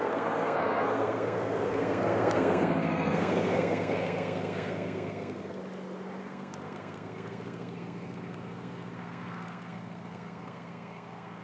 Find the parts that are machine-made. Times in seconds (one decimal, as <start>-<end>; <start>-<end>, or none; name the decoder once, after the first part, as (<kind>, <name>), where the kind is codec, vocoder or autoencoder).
0.0-5.6 (codec, SNAC); 6.2-11.4